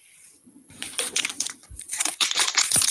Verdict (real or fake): fake